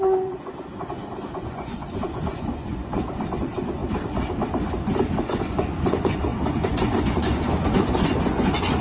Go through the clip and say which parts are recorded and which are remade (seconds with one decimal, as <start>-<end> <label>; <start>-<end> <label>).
0.0-3.8 remade; 3.8-5.2 recorded; 5.2-8.8 remade